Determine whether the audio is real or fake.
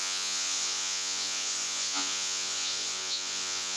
fake